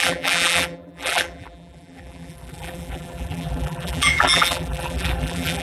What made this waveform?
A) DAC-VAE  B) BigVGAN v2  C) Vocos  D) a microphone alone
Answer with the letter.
B